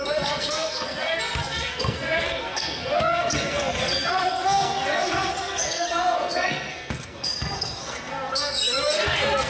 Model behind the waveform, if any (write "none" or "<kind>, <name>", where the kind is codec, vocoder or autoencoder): codec, SNAC